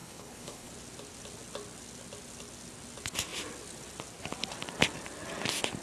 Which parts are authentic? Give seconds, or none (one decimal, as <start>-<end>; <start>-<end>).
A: 0.7-5.8